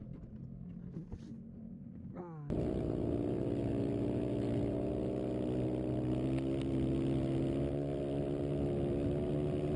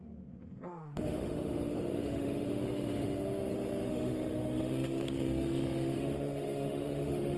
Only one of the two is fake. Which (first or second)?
second